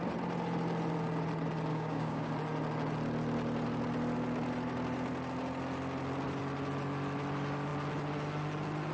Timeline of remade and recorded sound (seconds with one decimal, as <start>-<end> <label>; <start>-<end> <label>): 0.0-1.7 recorded; 1.7-2.3 remade; 2.3-8.9 recorded